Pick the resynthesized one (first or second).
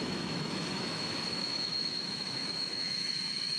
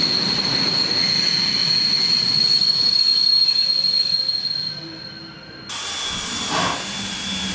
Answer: first